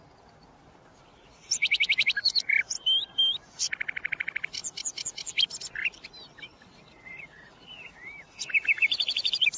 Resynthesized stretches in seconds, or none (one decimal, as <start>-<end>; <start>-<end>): none